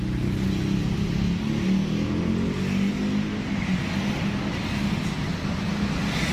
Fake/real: real